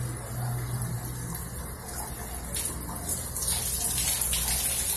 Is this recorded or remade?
recorded